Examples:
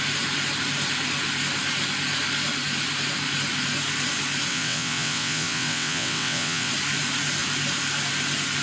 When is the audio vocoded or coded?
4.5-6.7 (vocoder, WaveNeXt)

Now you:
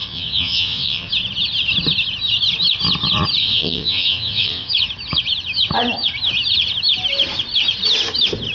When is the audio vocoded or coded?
0.0-1.1 (vocoder, WaveNeXt); 3.4-4.7

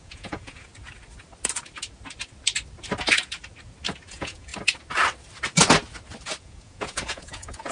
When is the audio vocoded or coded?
0.0-0.7 (vocoder, Vocos); 4.1-4.5; 6.4-7.7